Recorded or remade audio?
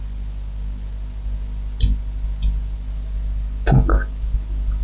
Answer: recorded